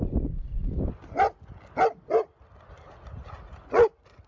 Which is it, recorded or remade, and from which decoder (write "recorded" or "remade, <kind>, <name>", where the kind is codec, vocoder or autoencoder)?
recorded